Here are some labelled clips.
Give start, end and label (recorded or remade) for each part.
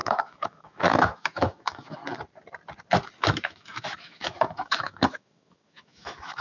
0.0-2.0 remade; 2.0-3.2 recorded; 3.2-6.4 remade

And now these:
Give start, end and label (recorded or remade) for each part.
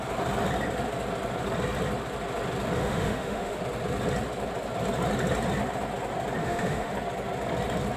0.0-2.8 recorded; 2.8-3.6 remade; 3.6-6.4 recorded; 6.4-6.9 remade; 6.9-8.0 recorded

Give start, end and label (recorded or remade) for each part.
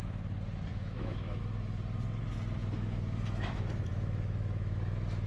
0.0-0.7 recorded; 0.7-1.4 remade; 1.4-2.6 recorded; 2.6-5.3 remade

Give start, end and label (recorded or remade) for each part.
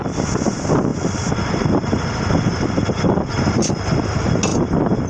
0.0-5.1 recorded